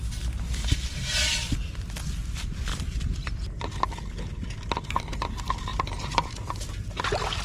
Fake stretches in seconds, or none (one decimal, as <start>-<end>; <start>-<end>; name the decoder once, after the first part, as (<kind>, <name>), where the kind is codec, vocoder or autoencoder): 2.7-3.3 (vocoder, BigVGAN v2); 5.7-6.7